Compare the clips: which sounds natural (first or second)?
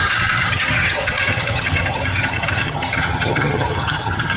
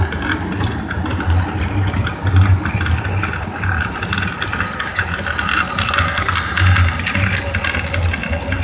second